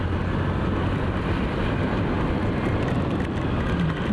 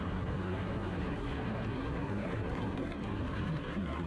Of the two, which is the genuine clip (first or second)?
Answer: first